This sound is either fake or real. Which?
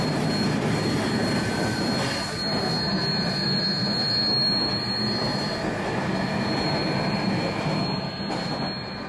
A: real